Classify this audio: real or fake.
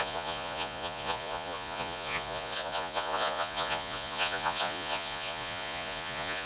fake